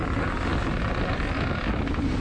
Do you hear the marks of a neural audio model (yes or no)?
no